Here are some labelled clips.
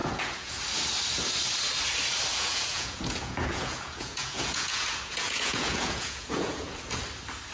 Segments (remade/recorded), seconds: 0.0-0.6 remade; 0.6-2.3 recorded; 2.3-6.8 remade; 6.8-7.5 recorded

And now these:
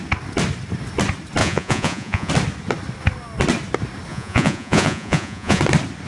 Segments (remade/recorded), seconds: 0.0-1.4 recorded; 1.4-2.3 remade; 2.3-4.1 recorded; 4.1-5.6 remade; 5.6-6.1 recorded

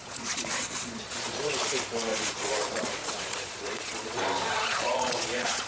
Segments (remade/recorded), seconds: 0.0-1.5 remade; 1.5-2.1 recorded; 2.1-5.7 remade